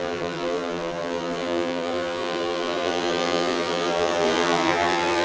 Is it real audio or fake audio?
fake